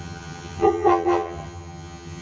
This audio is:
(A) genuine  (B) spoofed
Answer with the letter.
B